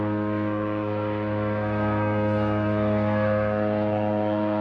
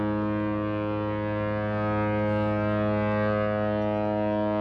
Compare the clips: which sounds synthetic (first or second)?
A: first